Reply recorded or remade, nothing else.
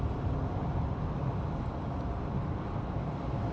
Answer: recorded